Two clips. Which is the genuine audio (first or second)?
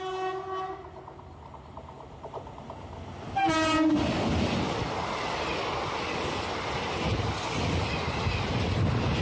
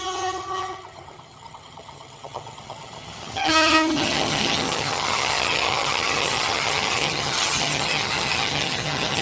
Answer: first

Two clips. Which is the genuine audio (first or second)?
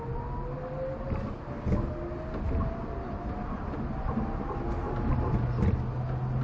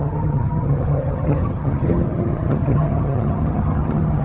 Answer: first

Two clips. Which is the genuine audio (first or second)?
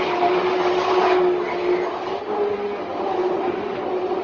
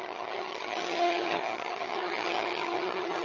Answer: first